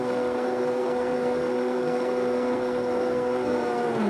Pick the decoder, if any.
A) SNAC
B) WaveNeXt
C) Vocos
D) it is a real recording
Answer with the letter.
A